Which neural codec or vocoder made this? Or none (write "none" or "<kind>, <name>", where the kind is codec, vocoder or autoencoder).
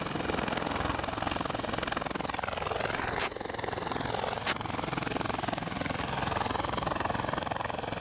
none